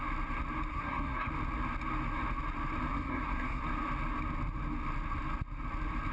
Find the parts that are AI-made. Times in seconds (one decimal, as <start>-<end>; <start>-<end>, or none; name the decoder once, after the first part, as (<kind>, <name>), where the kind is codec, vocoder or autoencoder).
0.7-1.3 (codec, SNAC); 2.9-3.6